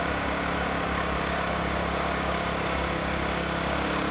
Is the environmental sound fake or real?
fake